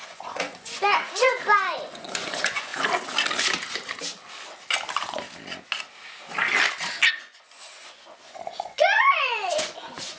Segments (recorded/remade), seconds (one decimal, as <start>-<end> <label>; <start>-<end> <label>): 0.0-2.7 remade; 2.7-7.1 recorded; 7.1-10.2 remade